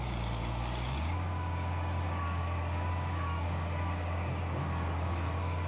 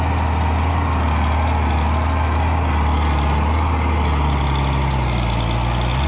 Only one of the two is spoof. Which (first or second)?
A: first